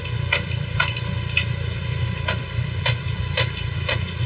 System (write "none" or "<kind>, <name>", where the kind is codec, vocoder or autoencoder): none